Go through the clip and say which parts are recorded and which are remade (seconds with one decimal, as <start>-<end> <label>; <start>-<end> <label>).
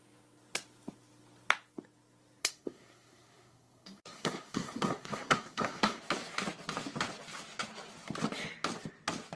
0.0-2.4 recorded; 2.4-6.0 remade; 6.0-9.4 recorded